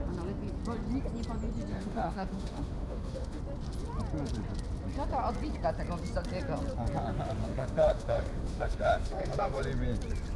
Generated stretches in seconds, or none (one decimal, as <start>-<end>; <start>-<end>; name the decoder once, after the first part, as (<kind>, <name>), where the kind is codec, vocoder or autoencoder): 1.7-3.4 (autoencoder, DAC-VAE); 7.4-9.6